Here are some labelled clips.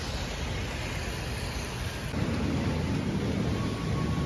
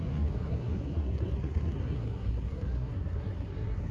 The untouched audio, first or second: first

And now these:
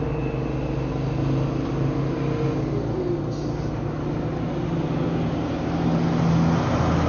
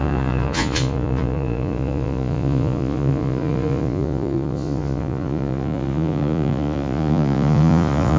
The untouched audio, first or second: first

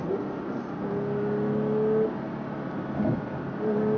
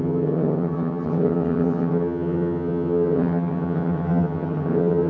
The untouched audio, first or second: first